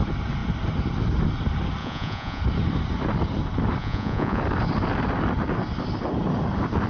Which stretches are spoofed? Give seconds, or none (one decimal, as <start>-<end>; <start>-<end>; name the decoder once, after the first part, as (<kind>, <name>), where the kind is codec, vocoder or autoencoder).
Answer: 1.8-2.4 (vocoder, Vocos); 3.8-4.4

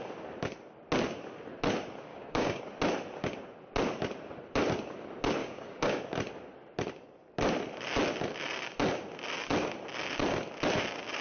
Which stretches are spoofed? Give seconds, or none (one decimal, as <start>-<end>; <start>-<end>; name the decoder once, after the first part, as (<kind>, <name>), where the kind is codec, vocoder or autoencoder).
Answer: 2.1-2.6 (codec, DAC); 5.4-6.0

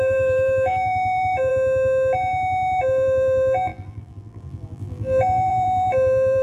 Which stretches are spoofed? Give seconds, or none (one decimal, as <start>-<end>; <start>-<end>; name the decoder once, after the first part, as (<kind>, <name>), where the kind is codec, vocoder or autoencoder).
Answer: 0.0-1.5 (vocoder, BigVGAN v2); 2.8-6.4

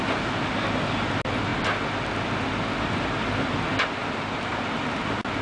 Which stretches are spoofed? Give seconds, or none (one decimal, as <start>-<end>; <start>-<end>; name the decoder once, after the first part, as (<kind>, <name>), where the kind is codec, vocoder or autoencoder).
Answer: none

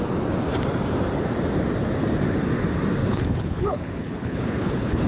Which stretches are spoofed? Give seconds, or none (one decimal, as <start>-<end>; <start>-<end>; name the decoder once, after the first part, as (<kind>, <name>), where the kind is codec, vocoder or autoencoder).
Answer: 3.0-5.1 (codec, HILCodec)